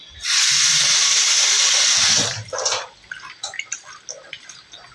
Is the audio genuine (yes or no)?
yes